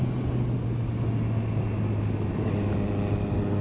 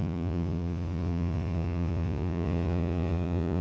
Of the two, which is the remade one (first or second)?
second